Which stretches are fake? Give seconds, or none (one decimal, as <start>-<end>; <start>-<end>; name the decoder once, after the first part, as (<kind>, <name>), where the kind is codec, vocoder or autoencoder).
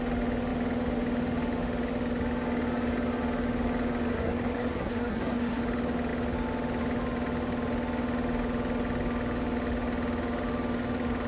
4.1-5.6 (codec, SNAC)